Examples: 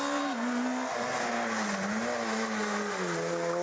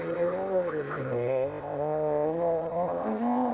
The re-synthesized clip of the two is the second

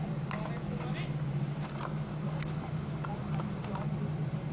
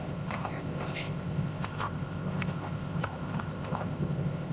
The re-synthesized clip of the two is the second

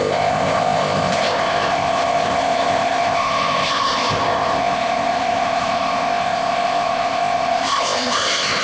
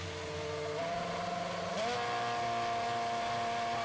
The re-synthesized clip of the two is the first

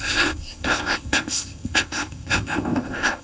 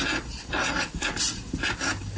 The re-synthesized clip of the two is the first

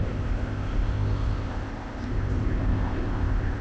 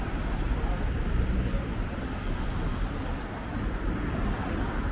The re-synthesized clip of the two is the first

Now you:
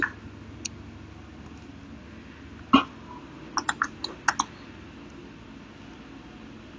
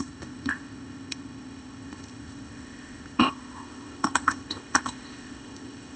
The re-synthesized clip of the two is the second